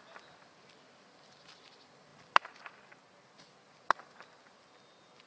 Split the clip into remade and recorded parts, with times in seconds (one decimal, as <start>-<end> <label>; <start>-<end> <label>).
0.0-5.3 recorded